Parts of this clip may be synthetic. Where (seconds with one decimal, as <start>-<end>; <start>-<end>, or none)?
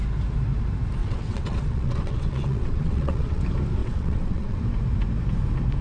1.0-3.4; 3.8-4.6